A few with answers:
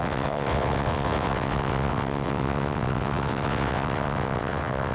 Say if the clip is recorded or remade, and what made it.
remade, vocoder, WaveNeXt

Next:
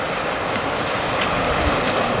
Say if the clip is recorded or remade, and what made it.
recorded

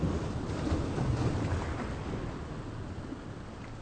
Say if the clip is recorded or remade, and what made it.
recorded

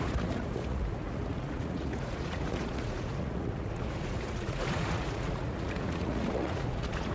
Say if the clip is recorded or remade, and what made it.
remade, vocoder, Vocos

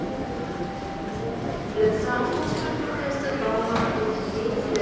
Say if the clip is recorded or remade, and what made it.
recorded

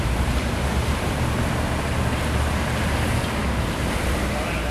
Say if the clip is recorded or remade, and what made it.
recorded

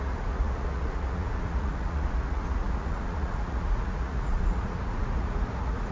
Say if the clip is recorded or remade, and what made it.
remade, vocoder, Vocos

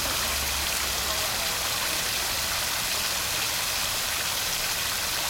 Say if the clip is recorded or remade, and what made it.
recorded